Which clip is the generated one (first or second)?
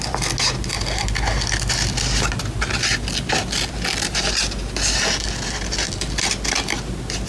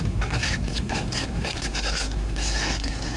second